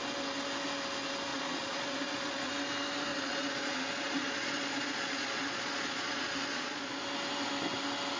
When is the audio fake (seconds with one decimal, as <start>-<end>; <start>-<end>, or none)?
1.3-2.5; 3.1-7.0